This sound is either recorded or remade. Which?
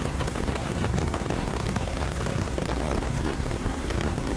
remade